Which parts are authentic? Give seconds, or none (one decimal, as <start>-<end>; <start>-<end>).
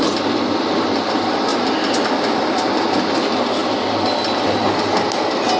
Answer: 0.0-5.6